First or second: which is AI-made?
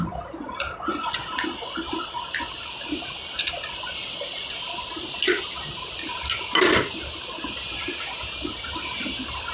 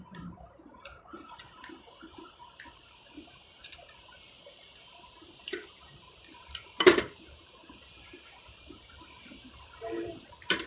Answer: second